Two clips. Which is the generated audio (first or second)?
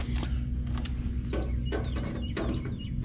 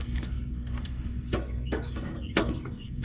second